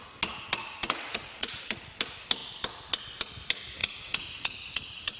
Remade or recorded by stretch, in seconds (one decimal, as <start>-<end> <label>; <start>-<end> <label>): 0.0-0.6 recorded; 0.6-1.6 remade; 1.6-3.8 recorded; 3.8-5.2 remade